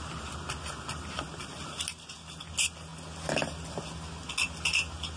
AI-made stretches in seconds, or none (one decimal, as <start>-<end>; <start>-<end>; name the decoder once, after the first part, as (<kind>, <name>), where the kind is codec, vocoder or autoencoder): none